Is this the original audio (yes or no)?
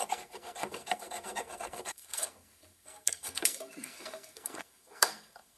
no